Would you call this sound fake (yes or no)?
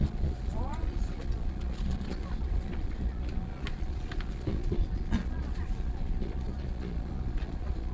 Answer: yes